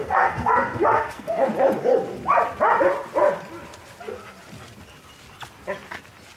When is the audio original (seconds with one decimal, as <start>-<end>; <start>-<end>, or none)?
1.5-6.4